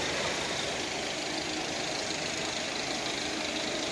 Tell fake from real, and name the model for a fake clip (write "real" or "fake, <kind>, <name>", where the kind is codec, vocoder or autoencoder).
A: fake, vocoder, BigVGAN v2